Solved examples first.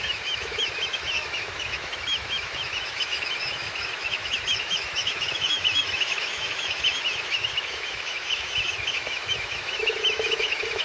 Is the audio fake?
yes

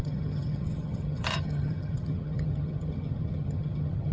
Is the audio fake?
yes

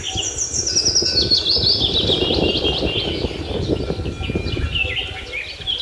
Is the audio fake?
no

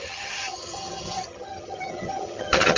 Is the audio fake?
yes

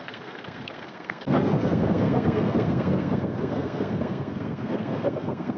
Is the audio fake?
yes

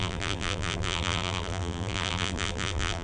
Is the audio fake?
yes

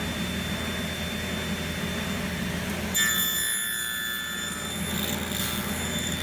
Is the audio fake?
no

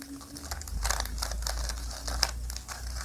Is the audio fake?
no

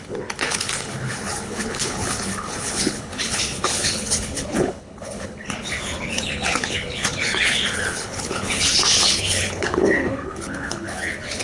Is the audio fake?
yes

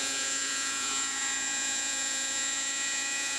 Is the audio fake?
yes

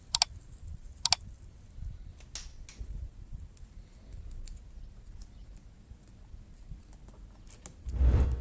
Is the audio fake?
no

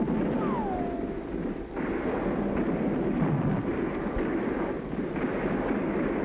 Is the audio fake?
no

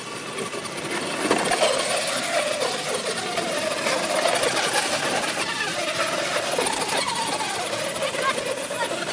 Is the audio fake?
no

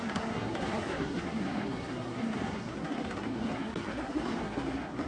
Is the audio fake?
yes